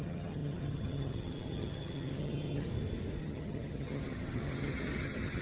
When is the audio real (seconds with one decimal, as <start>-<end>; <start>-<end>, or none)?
2.7-3.2